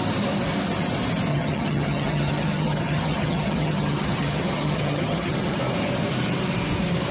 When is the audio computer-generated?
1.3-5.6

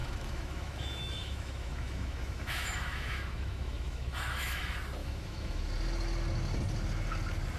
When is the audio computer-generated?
0.0-4.6; 5.0-5.6

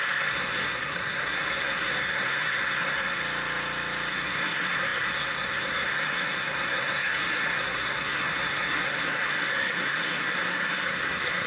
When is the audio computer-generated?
0.0-3.2; 4.1-11.5

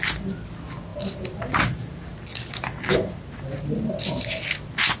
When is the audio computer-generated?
none